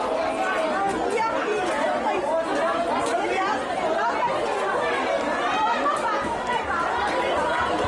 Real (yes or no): yes